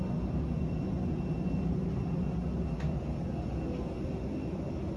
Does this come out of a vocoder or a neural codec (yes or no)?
no